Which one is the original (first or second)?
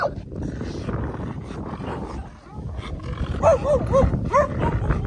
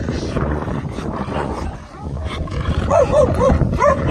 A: first